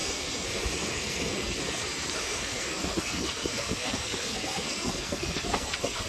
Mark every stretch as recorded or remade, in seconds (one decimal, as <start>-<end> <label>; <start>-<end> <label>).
0.0-6.1 remade